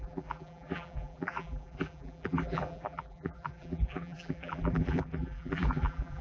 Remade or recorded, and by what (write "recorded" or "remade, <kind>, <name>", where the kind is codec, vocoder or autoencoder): remade, vocoder, BigVGAN v2